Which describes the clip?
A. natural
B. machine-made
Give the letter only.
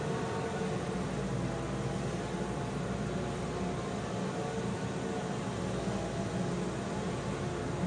A